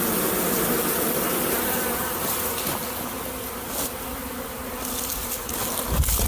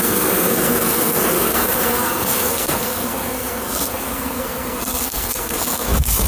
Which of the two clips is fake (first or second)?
second